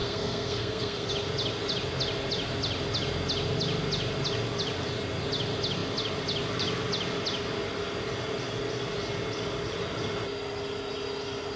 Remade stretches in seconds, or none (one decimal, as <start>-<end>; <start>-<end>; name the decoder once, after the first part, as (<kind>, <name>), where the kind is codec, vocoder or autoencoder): 0.0-1.1 (codec, SNAC)